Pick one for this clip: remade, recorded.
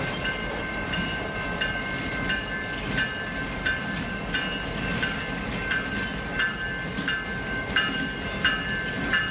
recorded